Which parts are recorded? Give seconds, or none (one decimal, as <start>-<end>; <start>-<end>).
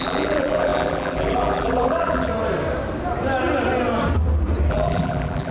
2.3-4.7